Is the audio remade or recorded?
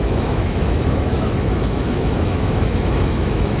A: remade